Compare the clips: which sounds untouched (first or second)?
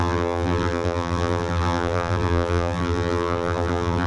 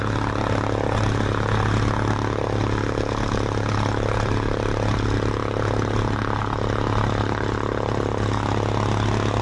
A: second